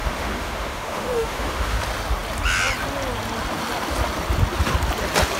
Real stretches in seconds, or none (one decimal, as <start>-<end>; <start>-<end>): 1.8-5.4